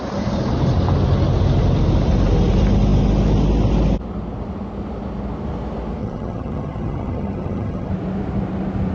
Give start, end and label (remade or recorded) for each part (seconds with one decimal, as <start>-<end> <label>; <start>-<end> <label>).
0.0-6.0 recorded; 6.0-7.9 remade; 7.9-8.9 recorded